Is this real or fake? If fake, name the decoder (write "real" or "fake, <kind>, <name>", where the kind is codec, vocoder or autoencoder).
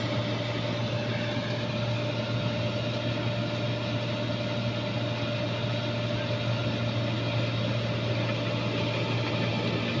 real